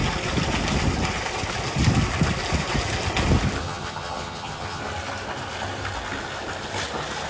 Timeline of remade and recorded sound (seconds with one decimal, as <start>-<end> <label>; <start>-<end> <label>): 0.0-3.6 recorded; 3.6-4.8 remade; 4.8-7.3 recorded

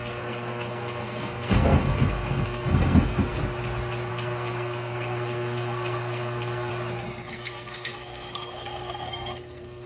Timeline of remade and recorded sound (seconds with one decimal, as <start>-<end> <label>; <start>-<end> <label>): 0.0-3.4 remade; 3.4-4.1 recorded; 4.1-6.7 remade; 6.7-7.3 recorded; 7.3-9.9 remade

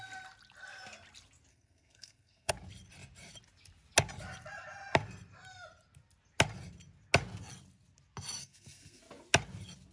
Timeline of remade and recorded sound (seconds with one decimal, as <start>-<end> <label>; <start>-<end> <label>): 0.0-1.5 recorded; 1.5-2.5 remade; 2.5-8.4 recorded; 8.4-9.0 remade; 9.0-9.9 recorded